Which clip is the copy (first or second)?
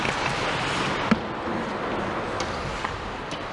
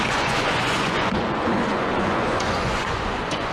second